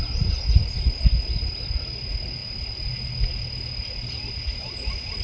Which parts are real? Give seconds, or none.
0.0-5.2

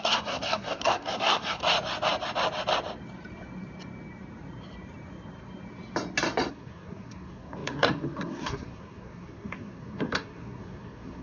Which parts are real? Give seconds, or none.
1.6-6.5

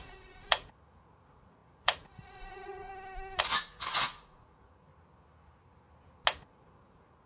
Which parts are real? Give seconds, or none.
2.9-3.4; 4.9-6.4

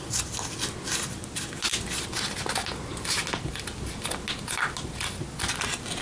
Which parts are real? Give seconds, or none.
0.0-6.0

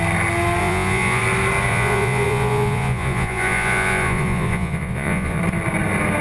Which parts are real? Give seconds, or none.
0.0-0.6; 1.2-1.7; 5.4-6.2

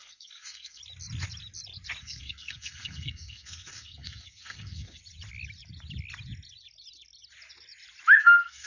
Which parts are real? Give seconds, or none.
0.8-2.0; 5.0-8.2